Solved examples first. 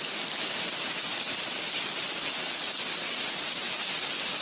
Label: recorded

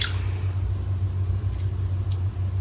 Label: recorded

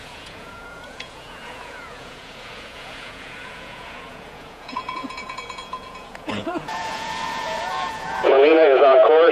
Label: remade